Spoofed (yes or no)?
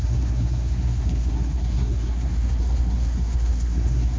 yes